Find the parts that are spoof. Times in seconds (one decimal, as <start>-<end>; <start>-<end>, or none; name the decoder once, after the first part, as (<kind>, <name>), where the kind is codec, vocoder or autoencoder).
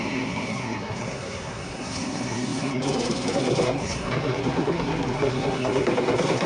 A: 0.0-6.5 (codec, SNAC)